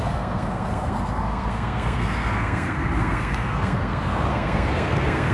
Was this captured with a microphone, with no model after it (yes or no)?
no